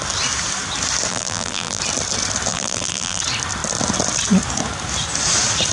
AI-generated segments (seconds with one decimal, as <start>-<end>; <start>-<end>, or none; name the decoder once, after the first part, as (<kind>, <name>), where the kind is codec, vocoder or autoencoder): 1.1-1.8 (vocoder, BigVGAN v2); 2.5-3.2